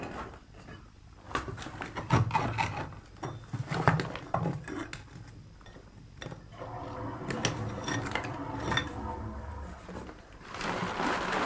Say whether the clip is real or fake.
real